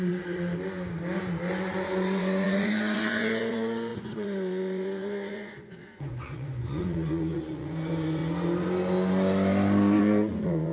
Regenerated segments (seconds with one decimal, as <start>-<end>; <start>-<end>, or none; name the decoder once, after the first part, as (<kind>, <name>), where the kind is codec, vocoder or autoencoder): 0.0-0.5 (vocoder, Vocos); 1.5-8.2; 10.0-10.7